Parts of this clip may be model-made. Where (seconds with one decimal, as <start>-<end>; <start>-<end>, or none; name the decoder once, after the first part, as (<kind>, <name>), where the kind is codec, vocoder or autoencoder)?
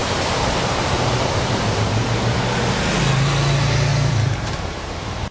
0.0-3.0 (vocoder, BigVGAN v2); 3.9-5.3